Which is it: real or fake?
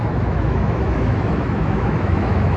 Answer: fake